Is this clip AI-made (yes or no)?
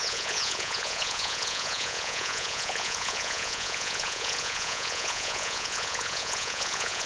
yes